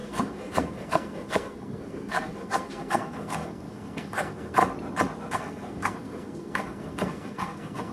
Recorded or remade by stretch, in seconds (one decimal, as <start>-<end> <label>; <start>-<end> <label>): 0.0-4.6 remade; 4.6-5.3 recorded; 5.3-7.9 remade